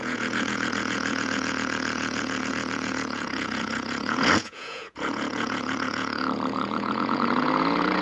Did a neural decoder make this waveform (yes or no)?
yes